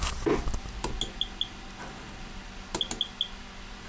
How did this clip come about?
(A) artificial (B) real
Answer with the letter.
B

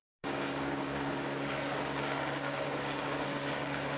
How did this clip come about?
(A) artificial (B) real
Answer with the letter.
A